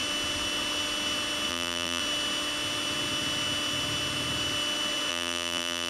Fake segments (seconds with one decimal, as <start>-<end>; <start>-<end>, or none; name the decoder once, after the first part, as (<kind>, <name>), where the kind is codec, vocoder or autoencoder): 1.5-2.0 (vocoder, BigVGAN v2); 5.1-5.9